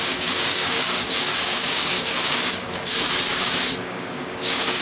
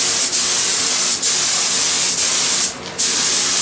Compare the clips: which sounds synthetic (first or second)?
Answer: first